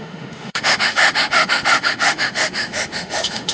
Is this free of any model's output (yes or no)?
no